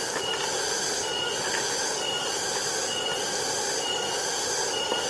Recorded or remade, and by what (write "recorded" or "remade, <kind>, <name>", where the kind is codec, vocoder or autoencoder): recorded